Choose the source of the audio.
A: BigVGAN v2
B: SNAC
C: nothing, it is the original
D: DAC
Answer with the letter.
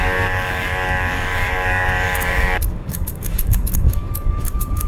D